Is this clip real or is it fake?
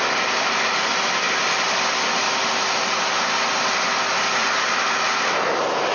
real